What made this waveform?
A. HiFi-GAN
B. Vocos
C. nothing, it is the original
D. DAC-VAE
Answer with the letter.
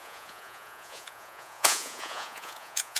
B